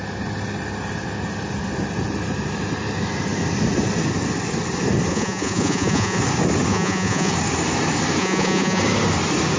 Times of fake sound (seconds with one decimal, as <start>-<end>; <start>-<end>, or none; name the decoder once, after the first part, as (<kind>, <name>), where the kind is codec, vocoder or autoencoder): 5.1-6.2 (vocoder, Vocos); 6.7-7.3; 8.2-8.8